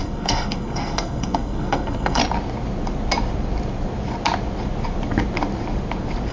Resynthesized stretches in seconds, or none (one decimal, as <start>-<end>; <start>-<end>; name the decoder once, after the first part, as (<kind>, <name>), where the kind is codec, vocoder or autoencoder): 0.0-2.2 (codec, SNAC)